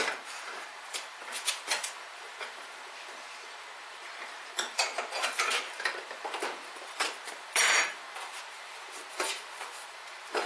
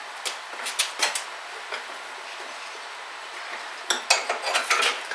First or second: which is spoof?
first